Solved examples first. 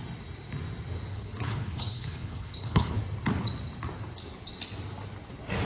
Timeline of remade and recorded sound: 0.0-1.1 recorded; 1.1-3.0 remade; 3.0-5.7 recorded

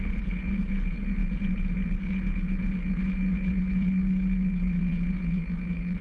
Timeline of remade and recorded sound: 0.0-6.0 remade

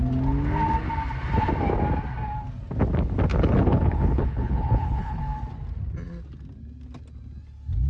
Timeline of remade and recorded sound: 0.0-3.3 recorded; 3.3-5.2 remade; 5.2-7.9 recorded